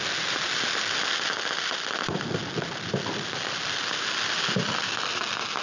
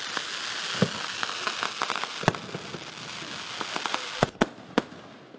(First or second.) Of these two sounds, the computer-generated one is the first